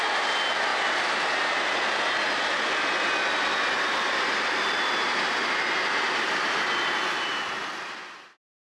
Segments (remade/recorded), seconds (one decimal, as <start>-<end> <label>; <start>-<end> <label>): 0.0-8.7 recorded